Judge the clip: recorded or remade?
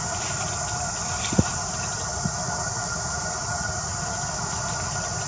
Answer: recorded